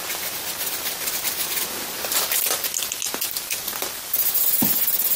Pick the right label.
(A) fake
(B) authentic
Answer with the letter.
B